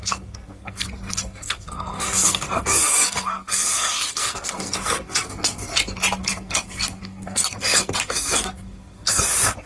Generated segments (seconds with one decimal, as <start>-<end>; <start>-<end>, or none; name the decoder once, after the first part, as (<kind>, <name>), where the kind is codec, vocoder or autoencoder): 0.0-5.7 (codec, SNAC); 6.2-9.7